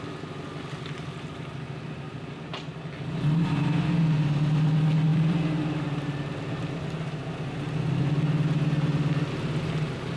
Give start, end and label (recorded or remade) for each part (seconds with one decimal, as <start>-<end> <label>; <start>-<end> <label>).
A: 0.0-2.5 recorded; 2.5-3.1 remade; 3.1-5.1 recorded; 5.1-8.0 remade; 8.0-10.2 recorded